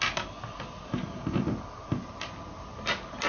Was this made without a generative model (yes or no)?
yes